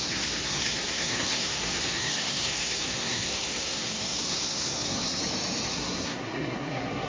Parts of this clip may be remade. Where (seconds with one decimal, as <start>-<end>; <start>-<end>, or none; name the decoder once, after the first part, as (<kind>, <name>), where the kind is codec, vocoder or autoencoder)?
0.0-5.2 (codec, SNAC); 5.7-7.1